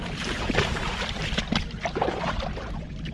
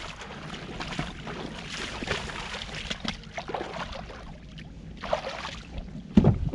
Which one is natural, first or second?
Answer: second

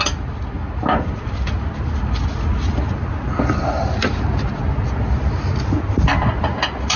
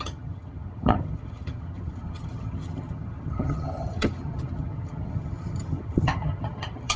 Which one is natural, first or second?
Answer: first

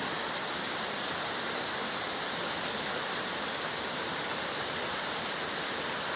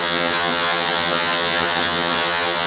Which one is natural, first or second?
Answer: first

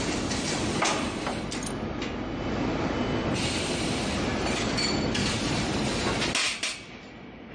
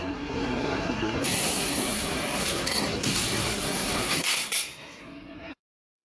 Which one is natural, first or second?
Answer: first